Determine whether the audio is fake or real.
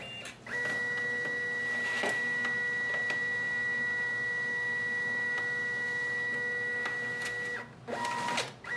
real